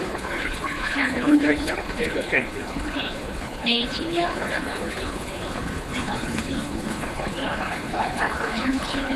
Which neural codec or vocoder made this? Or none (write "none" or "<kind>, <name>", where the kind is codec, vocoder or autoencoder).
codec, HILCodec